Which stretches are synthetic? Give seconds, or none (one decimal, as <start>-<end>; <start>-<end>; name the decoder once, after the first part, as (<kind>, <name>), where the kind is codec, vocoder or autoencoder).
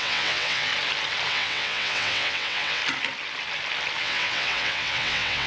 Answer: 0.0-0.7 (vocoder, WaveNeXt); 1.3-2.8; 4.0-5.5